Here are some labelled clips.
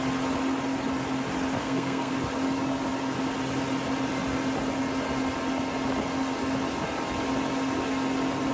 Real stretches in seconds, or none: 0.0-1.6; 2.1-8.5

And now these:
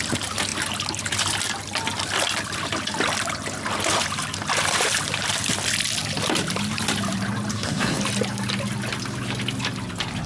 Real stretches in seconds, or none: 0.0-7.5; 8.0-10.3

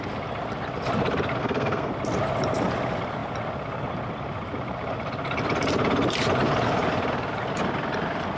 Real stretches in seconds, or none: 0.0-1.4; 1.9-8.4

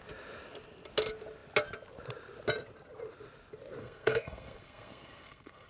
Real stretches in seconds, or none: 0.0-3.8

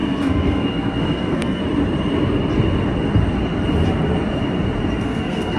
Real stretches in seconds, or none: 1.6-5.0

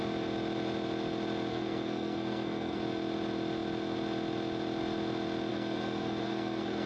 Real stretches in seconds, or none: 0.0-1.5; 2.8-5.5

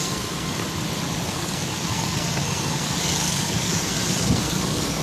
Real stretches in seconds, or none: 0.6-1.2

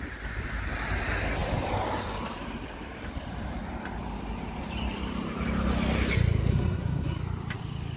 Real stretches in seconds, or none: 0.0-6.5; 7.2-8.0